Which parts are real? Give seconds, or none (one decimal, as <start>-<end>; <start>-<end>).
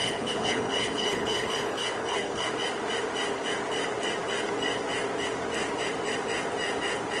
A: 2.5-7.2